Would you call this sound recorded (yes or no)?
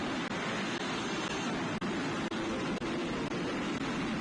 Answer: yes